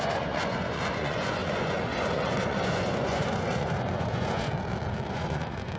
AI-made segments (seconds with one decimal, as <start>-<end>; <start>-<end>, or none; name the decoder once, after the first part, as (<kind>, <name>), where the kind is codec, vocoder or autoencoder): 0.0-4.5 (vocoder, Vocos); 5.1-5.8

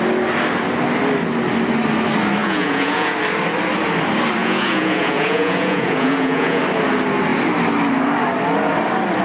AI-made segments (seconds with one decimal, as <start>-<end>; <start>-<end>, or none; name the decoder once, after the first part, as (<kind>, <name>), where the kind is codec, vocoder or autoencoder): 2.4-3.2 (vocoder, Vocos); 4.4-6.6

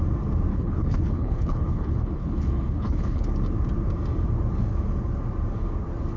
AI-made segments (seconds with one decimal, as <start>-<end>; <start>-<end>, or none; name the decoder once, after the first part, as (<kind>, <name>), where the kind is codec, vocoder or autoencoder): 0.5-3.3 (codec, HILCodec)

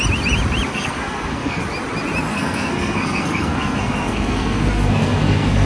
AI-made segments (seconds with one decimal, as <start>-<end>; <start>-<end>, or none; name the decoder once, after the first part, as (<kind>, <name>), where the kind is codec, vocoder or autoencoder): 0.7-1.6 (codec, SNAC); 2.3-5.7

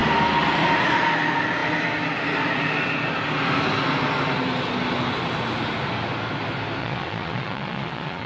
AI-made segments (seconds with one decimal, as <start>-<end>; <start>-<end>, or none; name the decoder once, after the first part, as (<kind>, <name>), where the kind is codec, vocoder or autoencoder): 6.8-8.3 (vocoder, Vocos)

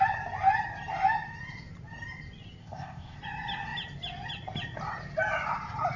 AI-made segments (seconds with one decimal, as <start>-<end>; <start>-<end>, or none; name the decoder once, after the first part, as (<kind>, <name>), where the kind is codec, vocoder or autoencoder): 2.6-3.2 (codec, ZipCodec)

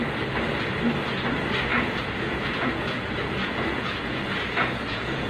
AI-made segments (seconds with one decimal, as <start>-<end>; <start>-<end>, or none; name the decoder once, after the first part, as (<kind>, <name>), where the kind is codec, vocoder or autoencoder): 1.7-5.3 (vocoder, Vocos)

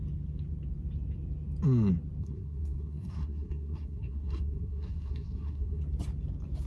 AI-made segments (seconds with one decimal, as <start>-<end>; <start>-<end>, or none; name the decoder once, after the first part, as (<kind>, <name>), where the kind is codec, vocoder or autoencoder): 2.2-5.8 (codec, SNAC)